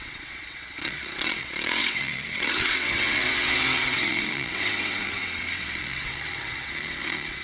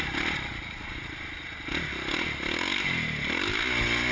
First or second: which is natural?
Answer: second